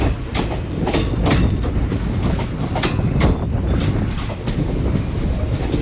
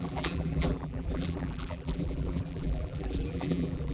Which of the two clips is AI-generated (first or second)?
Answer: second